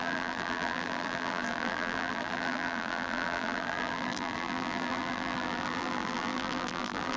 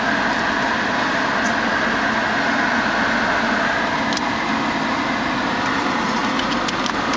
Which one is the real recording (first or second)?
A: second